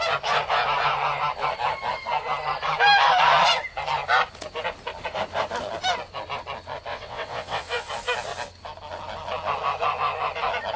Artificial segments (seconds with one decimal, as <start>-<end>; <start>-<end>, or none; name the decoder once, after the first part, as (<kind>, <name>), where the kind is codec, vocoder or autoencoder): 6.9-7.9 (vocoder, WaveNeXt)